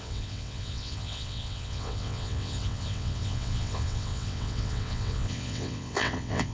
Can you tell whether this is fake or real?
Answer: fake